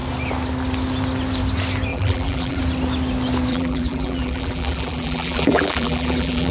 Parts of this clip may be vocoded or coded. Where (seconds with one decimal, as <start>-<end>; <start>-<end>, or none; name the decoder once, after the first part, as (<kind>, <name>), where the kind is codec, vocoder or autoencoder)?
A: 1.9-2.6 (vocoder, BigVGAN v2); 3.5-6.5